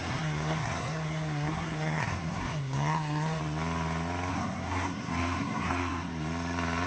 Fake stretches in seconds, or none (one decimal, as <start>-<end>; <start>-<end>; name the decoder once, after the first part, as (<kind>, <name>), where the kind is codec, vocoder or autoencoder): 0.0-3.4 (codec, SNAC); 4.3-6.1